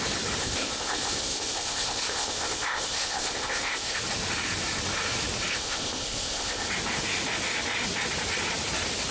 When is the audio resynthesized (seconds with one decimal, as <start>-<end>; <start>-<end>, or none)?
0.4-4.0; 5.5-6.7